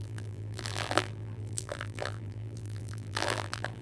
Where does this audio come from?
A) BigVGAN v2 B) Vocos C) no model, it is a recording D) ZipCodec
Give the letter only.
A